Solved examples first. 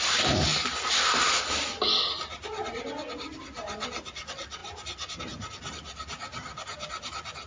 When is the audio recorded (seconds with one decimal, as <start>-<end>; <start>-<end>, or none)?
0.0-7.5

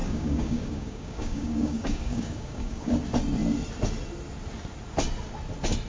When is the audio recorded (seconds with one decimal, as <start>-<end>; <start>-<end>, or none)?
2.9-5.9

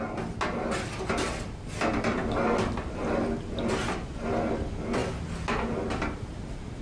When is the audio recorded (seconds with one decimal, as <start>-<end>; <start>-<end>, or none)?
0.0-6.8

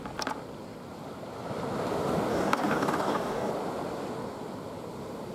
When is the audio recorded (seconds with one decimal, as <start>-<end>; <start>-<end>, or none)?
0.0-2.3; 3.5-5.3

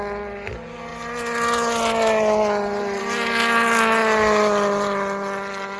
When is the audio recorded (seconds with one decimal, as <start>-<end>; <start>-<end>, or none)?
0.0-5.8

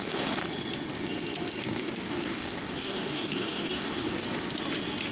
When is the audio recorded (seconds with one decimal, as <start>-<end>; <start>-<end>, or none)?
0.4-1.6; 4.2-5.1